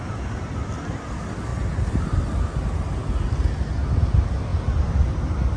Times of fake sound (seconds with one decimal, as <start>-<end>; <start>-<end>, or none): none

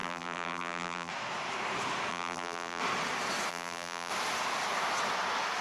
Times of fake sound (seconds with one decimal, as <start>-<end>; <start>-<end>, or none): 0.0-1.1; 2.1-2.8; 3.5-4.1

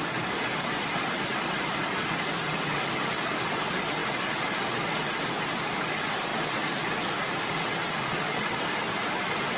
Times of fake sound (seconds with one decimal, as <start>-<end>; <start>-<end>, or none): none

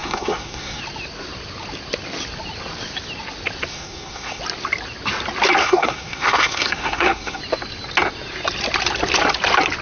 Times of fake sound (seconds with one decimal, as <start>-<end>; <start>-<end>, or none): 0.0-0.8; 3.7-4.4; 5.6-7.4

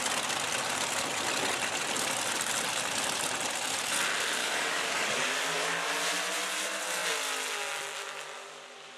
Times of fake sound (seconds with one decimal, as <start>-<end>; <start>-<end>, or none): 4.4-5.3

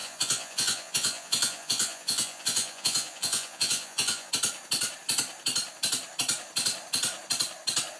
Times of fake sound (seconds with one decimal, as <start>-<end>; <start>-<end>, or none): 0.0-4.3

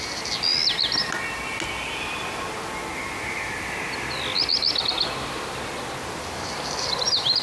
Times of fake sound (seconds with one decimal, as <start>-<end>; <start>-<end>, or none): none